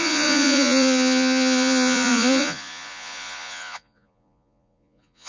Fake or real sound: fake